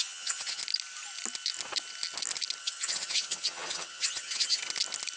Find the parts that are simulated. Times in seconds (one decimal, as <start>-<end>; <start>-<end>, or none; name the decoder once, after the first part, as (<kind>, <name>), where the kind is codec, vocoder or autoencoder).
0.0-0.6 (vocoder, HiFi-GAN); 2.6-4.6